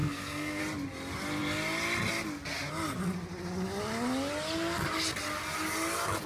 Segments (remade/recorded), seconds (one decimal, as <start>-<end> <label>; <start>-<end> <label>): 0.0-0.6 remade; 0.6-6.3 recorded